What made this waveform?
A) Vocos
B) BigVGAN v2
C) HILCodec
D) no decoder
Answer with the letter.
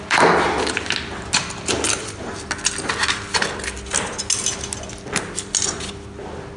D